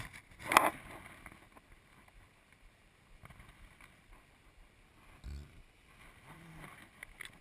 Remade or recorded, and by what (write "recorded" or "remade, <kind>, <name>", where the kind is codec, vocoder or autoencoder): recorded